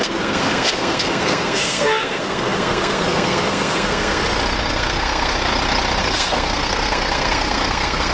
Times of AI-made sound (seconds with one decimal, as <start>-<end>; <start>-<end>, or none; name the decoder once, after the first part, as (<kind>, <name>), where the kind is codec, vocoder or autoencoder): 0.0-4.2 (codec, SNAC); 4.7-5.5; 6.0-8.1